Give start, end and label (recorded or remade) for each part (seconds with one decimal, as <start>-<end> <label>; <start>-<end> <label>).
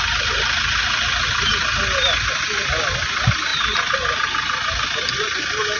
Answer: 0.0-5.8 recorded